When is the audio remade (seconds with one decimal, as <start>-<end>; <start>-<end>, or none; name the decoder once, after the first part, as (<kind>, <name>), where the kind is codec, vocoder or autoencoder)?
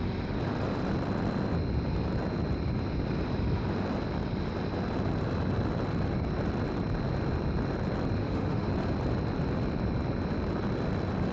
8.2-8.7 (autoencoder, DAC-VAE)